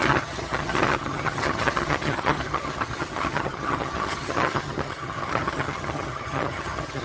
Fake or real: fake